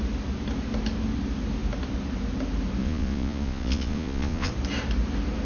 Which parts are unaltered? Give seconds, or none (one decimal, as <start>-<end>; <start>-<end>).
0.0-2.8; 4.5-5.5

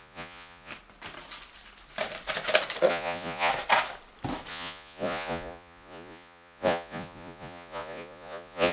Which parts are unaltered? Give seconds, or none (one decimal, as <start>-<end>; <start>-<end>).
0.7-2.9; 3.5-4.5

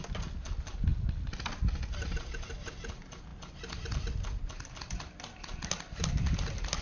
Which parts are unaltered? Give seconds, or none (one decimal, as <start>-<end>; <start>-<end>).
0.0-6.8

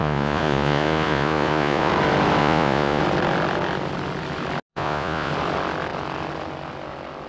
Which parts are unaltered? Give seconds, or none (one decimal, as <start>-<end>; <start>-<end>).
1.9-2.4; 3.0-4.7; 5.3-7.3

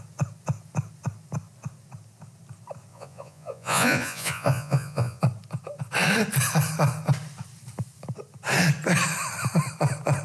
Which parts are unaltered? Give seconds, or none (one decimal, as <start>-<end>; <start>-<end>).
0.0-2.9; 5.2-10.2

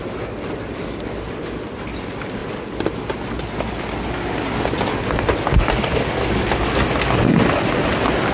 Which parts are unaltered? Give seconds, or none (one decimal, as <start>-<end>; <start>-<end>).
0.0-8.3

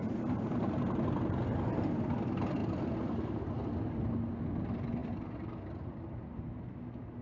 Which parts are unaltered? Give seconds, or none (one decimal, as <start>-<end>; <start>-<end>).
0.0-7.2